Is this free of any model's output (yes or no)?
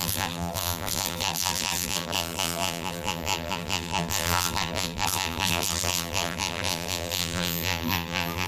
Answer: no